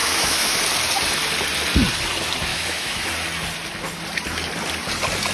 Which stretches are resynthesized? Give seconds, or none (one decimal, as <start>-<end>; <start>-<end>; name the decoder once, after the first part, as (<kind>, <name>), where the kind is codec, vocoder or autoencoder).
0.0-0.6 (autoencoder, DAC-VAE); 2.5-3.1